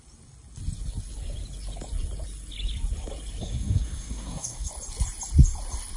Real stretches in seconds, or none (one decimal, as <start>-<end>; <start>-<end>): 0.0-3.4; 4.7-6.0